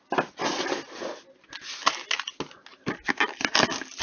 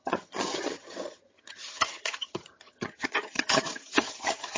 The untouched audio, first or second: first